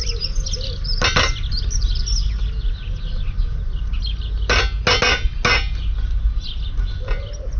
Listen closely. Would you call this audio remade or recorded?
recorded